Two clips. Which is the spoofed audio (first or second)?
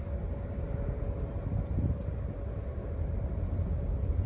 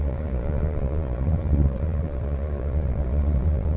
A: second